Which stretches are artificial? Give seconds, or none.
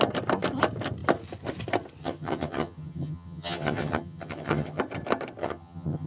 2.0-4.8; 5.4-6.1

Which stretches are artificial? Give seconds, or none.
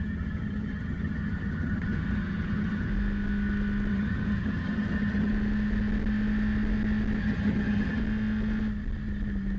0.0-2.9; 3.9-5.3; 7.2-8.0